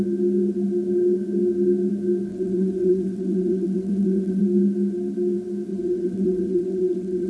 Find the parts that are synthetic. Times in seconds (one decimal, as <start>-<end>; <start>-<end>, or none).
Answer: 2.3-4.4; 5.7-7.3

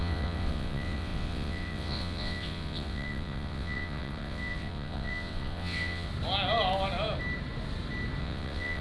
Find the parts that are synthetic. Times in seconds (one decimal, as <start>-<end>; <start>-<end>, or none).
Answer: 0.0-6.1; 8.2-8.8

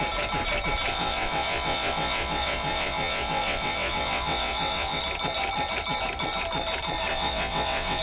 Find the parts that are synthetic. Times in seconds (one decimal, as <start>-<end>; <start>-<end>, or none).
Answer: 0.9-5.0; 7.1-8.0

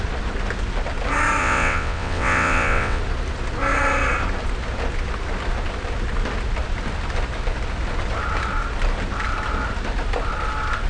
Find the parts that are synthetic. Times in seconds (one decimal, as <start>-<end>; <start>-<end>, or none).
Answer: 1.4-3.0

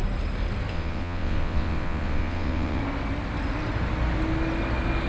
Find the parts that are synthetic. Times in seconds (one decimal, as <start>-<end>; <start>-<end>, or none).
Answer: 0.7-2.8